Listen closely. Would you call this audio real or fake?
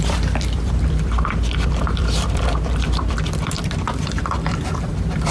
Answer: fake